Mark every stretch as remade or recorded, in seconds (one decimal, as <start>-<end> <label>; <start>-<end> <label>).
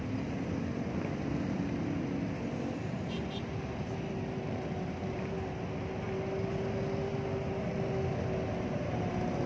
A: 0.0-9.5 recorded